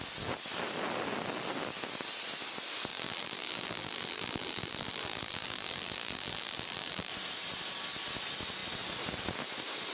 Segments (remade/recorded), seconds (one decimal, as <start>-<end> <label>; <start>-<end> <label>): 0.0-2.9 recorded; 2.9-7.1 remade; 7.1-9.9 recorded